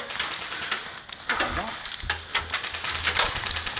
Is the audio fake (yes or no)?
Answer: no